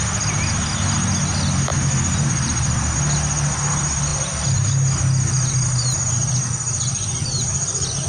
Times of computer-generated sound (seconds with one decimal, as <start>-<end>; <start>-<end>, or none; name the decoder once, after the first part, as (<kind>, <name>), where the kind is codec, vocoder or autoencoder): none